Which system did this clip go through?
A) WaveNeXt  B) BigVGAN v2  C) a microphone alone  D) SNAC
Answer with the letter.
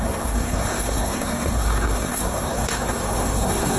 D